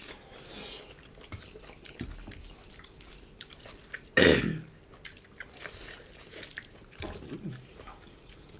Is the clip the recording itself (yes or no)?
yes